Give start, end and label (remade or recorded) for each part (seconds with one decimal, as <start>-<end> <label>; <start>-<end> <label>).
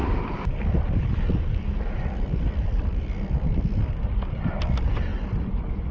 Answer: 0.0-5.1 remade; 5.1-5.9 recorded